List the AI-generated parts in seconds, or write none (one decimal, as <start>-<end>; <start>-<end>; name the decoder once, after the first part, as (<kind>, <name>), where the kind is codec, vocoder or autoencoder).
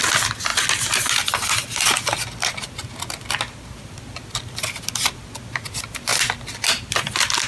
none